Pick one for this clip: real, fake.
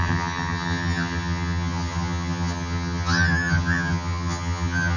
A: fake